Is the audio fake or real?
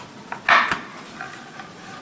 real